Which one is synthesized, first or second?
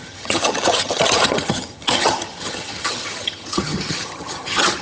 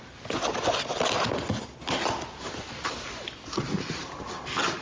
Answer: first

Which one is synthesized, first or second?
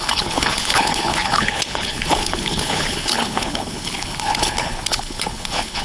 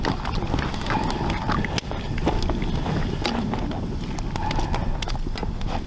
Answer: first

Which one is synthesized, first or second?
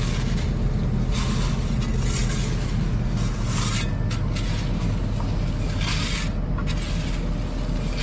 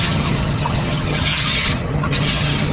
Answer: second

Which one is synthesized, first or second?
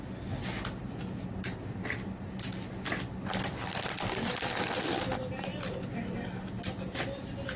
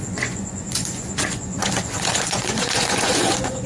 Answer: second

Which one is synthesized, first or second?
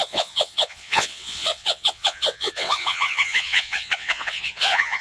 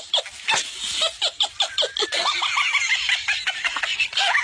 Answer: first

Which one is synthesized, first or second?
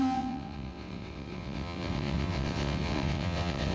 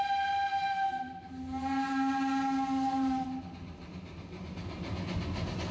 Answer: first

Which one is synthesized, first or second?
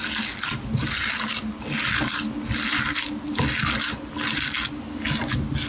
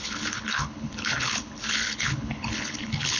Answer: second